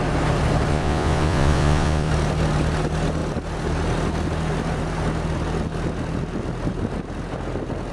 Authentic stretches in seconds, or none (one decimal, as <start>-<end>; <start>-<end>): 0.0-0.7; 2.1-7.9